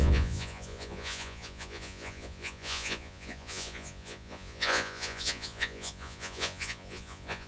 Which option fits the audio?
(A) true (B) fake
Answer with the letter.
B